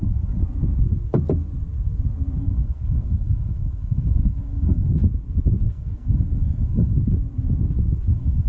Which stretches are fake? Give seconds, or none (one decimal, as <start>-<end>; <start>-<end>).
0.0-0.4; 2.4-5.0; 5.6-6.9; 8.1-8.5